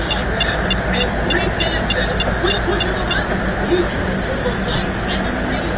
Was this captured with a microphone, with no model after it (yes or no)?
yes